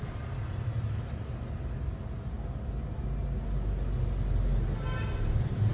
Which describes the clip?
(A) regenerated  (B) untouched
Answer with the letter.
B